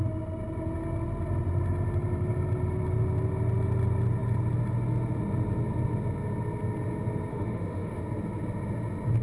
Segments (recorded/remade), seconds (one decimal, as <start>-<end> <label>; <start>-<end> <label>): 0.0-7.3 recorded; 7.3-8.0 remade; 8.0-9.2 recorded